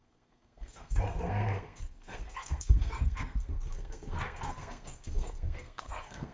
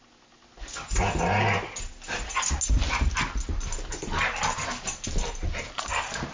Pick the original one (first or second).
second